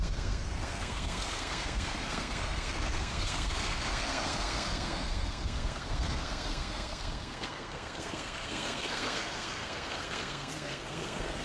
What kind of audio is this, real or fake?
fake